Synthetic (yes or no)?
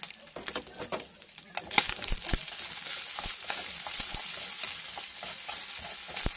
no